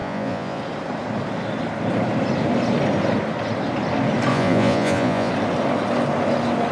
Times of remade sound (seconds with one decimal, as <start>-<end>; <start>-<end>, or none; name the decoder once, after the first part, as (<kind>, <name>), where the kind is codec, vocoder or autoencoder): 0.0-0.6 (vocoder, Vocos); 4.3-5.3

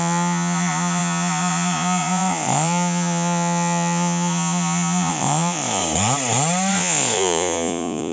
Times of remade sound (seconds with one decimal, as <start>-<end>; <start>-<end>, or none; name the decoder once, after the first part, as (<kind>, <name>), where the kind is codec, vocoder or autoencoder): 0.0-5.8 (vocoder, Vocos); 6.7-8.1

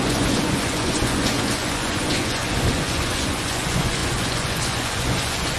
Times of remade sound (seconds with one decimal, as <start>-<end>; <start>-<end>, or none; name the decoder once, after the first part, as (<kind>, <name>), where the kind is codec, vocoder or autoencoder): 0.0-5.6 (vocoder, Vocos)

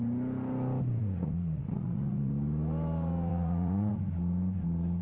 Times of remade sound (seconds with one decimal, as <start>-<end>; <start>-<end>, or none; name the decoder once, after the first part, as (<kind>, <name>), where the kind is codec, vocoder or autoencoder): 1.0-2.3 (vocoder, Vocos); 3.3-3.9

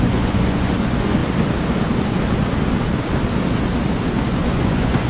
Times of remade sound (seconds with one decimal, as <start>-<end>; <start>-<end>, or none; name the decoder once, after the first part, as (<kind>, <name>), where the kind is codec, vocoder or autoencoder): 0.0-1.2 (vocoder, Vocos); 4.3-5.1

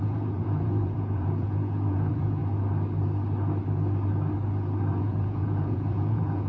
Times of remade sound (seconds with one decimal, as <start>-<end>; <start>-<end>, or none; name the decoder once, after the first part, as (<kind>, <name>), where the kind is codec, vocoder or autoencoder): 0.0-2.4 (vocoder, Vocos); 4.9-6.5

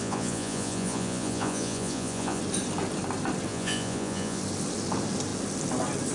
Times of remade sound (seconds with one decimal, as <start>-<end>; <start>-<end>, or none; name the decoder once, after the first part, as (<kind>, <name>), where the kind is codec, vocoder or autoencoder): 0.0-2.4 (vocoder, Vocos); 3.5-4.4